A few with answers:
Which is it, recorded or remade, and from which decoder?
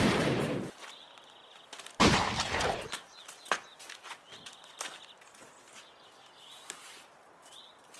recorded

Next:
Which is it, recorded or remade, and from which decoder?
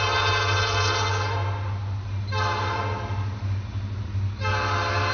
recorded